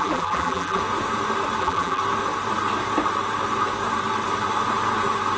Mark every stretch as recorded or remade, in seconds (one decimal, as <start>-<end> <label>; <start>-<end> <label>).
0.0-0.8 remade; 0.8-1.6 recorded; 1.6-2.0 remade; 2.0-5.4 recorded